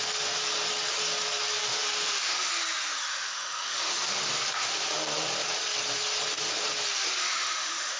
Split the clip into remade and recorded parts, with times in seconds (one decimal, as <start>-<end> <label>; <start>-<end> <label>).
0.0-1.6 recorded; 1.6-2.5 remade; 2.5-3.1 recorded; 3.1-3.9 remade; 3.9-7.2 recorded; 7.2-8.0 remade